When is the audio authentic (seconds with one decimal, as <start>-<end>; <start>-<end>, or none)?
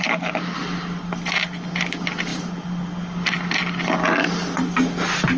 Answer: 0.0-5.4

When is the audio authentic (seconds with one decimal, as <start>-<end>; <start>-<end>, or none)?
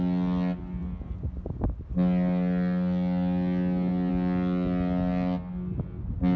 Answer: 0.0-6.4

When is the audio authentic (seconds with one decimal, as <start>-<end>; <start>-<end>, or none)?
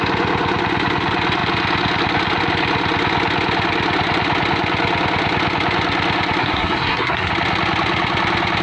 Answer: 0.0-6.4; 7.3-8.6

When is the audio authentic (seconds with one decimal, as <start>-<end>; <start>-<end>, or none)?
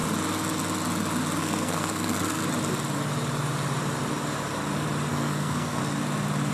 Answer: 0.0-1.4; 2.4-5.1; 5.8-6.5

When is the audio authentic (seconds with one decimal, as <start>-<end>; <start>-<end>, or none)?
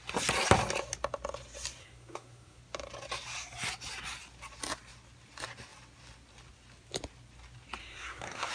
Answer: 0.0-1.8; 2.6-7.8